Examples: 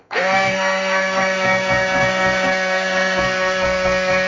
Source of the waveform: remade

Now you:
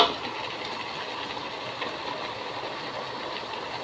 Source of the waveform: recorded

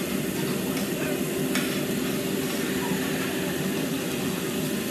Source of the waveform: recorded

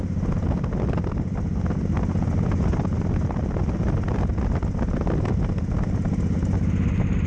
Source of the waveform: recorded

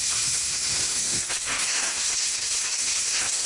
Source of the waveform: remade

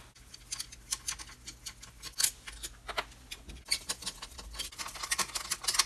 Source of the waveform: recorded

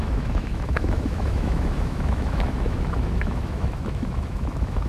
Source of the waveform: remade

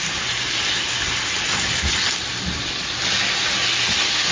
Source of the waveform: recorded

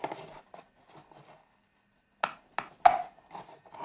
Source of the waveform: recorded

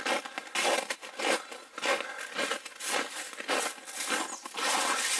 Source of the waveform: recorded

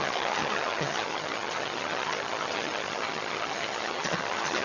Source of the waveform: remade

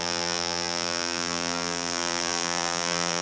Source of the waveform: remade